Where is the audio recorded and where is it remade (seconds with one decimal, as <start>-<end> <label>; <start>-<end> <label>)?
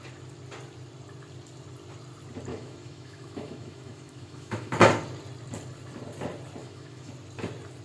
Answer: 0.0-2.5 recorded; 2.5-4.7 remade; 4.7-6.6 recorded; 6.6-7.1 remade; 7.1-7.8 recorded